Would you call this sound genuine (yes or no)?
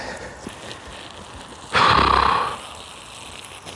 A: yes